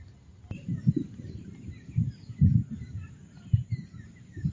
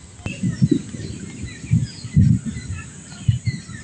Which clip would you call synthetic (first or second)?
first